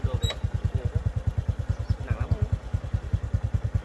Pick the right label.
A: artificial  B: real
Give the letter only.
B